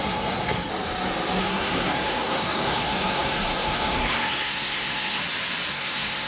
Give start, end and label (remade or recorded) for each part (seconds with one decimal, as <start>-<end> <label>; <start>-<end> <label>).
0.0-0.7 remade; 0.7-1.4 recorded; 1.4-5.2 remade; 5.2-5.7 recorded; 5.7-6.3 remade